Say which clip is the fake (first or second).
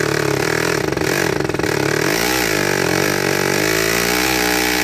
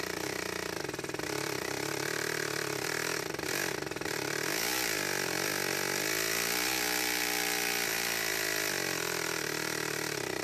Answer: second